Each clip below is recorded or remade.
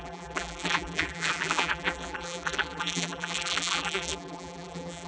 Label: remade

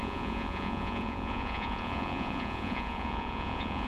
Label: remade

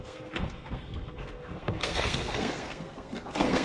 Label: remade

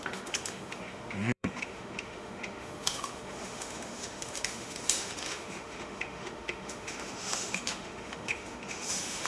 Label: remade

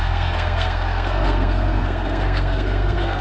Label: remade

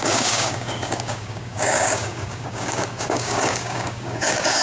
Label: remade